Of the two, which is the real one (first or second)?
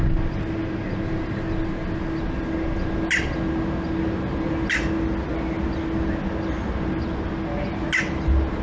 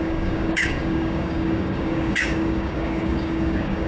first